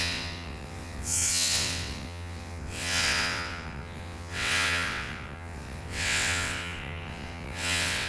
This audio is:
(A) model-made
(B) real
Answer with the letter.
A